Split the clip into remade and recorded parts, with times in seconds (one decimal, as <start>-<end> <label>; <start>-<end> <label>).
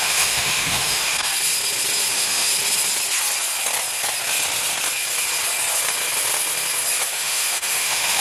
0.0-1.3 remade; 1.3-2.1 recorded; 2.1-2.5 remade; 2.5-7.1 recorded; 7.1-8.2 remade